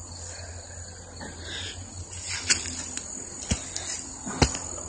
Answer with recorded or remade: recorded